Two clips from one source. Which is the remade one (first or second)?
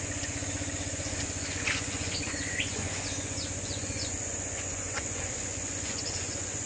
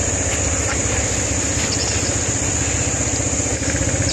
first